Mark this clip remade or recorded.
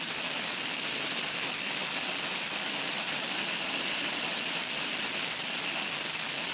recorded